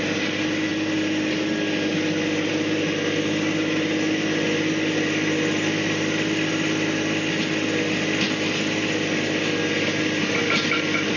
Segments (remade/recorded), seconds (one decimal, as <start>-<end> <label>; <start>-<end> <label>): 0.0-11.2 recorded